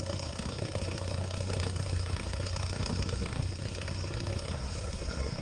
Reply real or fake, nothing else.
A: fake